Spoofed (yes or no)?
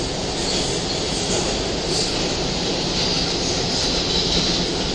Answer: no